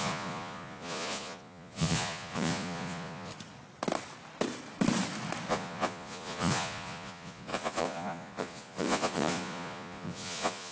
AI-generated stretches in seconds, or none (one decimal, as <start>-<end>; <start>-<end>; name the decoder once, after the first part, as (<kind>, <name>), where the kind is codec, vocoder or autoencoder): 0.0-3.3 (vocoder, Vocos); 5.5-10.7